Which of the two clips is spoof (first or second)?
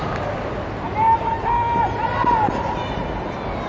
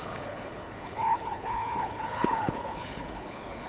second